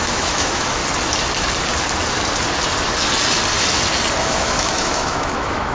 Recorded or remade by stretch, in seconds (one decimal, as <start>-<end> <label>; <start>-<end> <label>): 0.0-0.8 remade; 0.8-4.2 recorded; 4.2-5.7 remade